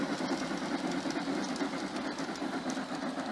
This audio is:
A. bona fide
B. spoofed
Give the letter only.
A